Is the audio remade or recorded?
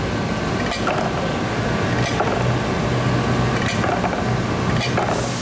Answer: recorded